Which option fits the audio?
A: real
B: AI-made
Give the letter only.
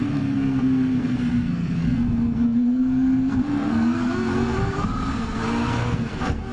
B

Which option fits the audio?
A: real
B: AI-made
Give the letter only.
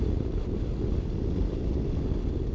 A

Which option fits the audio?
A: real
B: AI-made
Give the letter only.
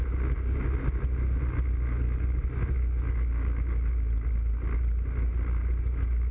A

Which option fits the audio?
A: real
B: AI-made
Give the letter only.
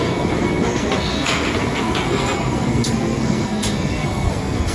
B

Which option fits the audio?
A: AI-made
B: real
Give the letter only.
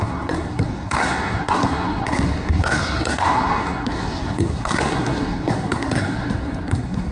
A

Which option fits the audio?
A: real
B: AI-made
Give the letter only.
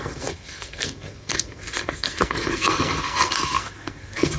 B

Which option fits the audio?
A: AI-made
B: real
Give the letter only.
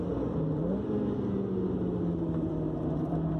B